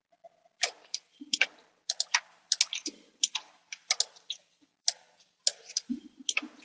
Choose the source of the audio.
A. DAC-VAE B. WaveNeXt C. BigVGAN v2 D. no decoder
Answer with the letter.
C